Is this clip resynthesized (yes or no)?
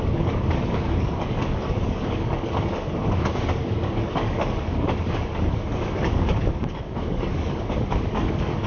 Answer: yes